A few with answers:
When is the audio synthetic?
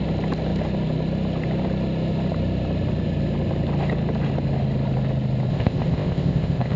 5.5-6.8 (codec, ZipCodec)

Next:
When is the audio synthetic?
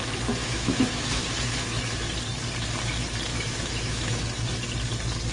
0.4-1.8 (autoencoder, DAC-VAE); 3.3-4.2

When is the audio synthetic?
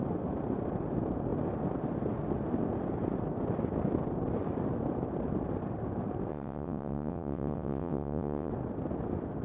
6.3-8.5 (vocoder, WaveNeXt)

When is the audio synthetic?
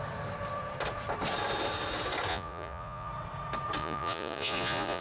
2.3-3.1 (vocoder, Vocos); 3.8-5.0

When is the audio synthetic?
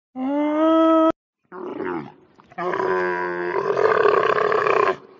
4.6-5.2 (codec, DAC)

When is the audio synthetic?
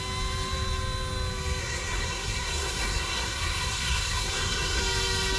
1.6-4.8 (codec, SNAC)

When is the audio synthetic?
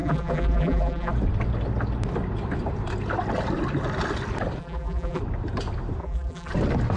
0.0-1.1 (vocoder, BigVGAN v2); 4.6-5.2; 6.0-6.5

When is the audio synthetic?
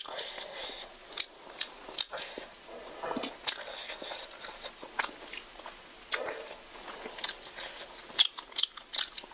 7.2-8.3 (vocoder, BigVGAN v2)